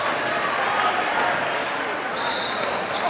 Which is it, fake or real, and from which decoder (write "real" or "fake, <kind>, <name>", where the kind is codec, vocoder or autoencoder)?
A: real